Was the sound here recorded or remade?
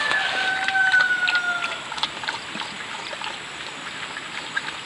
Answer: recorded